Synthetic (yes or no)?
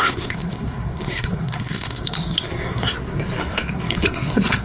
yes